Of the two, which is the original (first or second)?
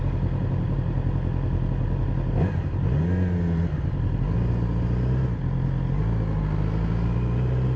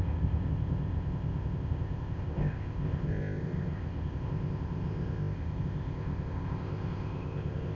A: first